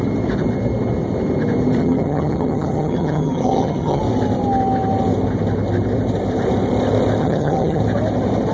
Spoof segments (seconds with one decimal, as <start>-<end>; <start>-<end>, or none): 1.8-4.0; 7.2-7.8

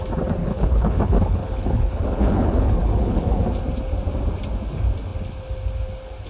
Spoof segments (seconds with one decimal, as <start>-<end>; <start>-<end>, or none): 0.4-3.4

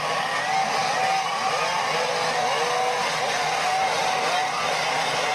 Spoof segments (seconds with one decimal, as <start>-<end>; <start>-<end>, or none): none

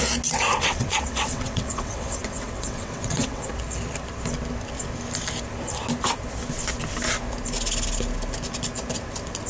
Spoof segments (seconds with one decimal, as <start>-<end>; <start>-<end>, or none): 0.5-3.6